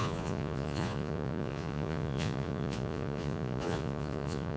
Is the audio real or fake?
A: fake